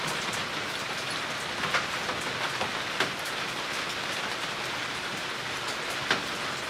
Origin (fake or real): real